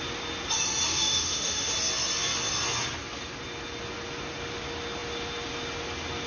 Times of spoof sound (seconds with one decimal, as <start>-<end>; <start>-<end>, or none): 0.9-1.7